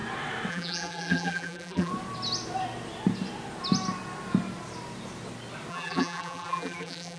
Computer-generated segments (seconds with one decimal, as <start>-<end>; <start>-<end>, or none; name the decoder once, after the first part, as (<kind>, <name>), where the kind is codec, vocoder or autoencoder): 0.5-1.9 (vocoder, BigVGAN v2); 5.7-7.2